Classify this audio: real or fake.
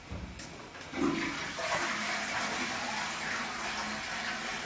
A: real